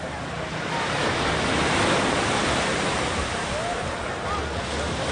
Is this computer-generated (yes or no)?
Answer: no